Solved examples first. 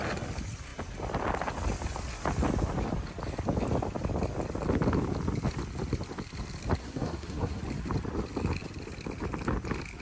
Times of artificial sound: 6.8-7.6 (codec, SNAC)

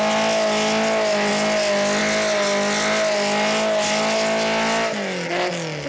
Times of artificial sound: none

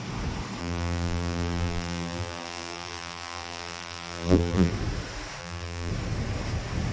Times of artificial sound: 0.6-4.7 (vocoder, BigVGAN v2); 5.4-5.9